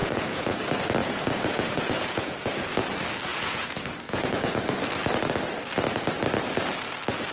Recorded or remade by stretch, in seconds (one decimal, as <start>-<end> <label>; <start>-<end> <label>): 0.0-0.6 remade; 0.6-1.0 recorded; 1.0-2.7 remade; 2.7-3.3 recorded; 3.3-4.6 remade; 4.6-7.3 recorded